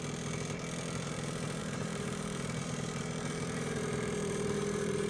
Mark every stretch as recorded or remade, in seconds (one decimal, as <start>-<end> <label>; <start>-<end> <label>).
0.0-1.6 recorded; 1.6-5.1 remade